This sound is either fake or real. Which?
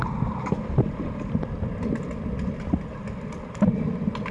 real